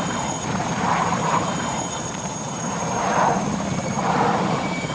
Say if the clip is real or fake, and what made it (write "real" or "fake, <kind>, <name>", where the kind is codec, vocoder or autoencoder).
fake, vocoder, BigVGAN v2